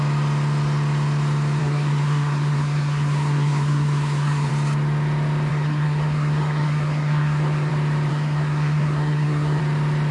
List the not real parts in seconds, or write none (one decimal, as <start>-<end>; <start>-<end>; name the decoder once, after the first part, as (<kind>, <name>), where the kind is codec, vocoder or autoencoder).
1.6-4.5 (codec, SNAC); 5.5-7.7; 8.1-9.6